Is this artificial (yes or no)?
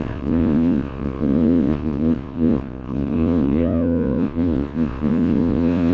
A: yes